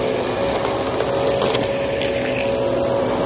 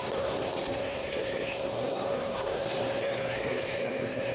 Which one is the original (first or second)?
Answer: first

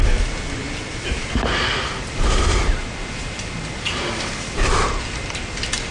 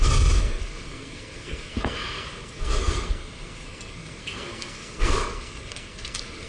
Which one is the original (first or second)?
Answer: first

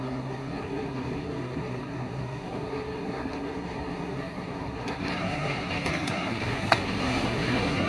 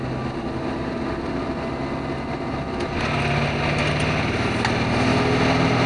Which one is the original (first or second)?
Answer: second